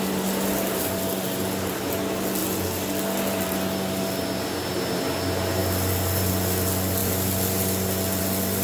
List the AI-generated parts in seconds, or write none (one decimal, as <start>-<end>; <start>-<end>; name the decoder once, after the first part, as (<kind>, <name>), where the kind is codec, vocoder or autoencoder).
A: none